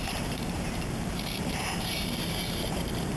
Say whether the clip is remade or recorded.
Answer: remade